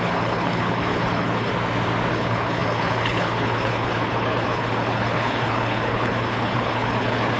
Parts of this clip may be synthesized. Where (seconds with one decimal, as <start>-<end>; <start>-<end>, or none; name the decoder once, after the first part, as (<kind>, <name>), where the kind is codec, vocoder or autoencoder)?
0.0-1.5 (codec, HILCodec); 2.1-7.4